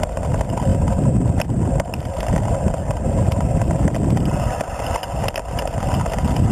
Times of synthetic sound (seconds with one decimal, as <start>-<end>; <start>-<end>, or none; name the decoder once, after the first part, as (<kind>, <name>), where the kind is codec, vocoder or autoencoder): none